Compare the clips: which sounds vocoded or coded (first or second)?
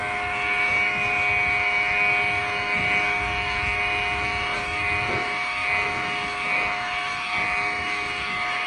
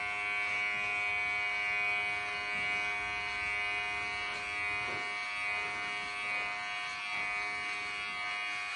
first